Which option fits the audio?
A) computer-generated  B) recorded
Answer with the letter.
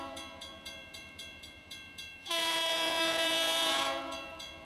A